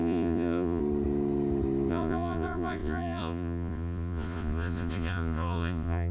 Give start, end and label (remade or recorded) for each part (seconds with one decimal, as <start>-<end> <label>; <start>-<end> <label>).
0.0-0.8 remade; 0.8-1.9 recorded; 1.9-6.1 remade